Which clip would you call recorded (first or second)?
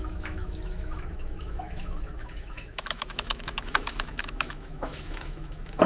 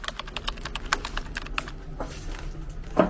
second